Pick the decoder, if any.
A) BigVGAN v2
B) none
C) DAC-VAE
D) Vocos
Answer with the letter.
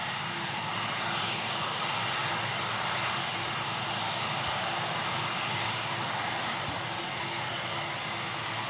B